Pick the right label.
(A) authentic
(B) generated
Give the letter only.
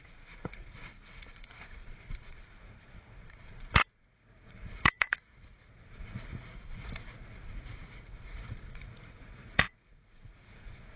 B